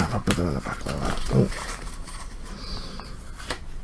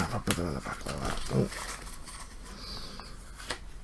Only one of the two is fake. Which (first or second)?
first